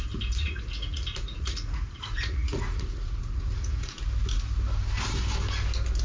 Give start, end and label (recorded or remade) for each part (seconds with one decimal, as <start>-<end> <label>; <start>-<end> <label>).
0.0-0.4 recorded; 0.4-4.0 remade; 4.0-6.0 recorded